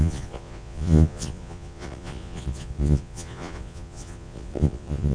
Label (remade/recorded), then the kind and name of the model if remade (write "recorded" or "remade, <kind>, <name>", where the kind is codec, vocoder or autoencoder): remade, vocoder, Vocos